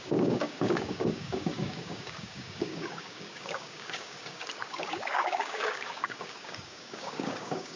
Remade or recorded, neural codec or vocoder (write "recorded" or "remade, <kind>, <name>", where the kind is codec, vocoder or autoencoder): remade, codec, DAC